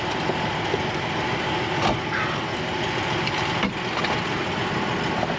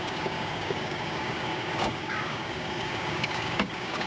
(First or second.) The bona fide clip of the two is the first